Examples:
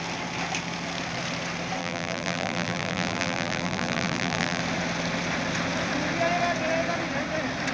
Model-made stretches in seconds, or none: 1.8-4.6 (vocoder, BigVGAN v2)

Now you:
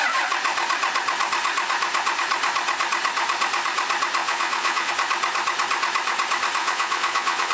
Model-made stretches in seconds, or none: 4.2-4.9 (vocoder, Vocos); 6.6-7.5

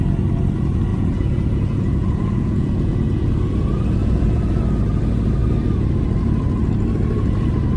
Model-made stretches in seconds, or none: 0.9-3.3 (vocoder, Vocos); 4.0-4.6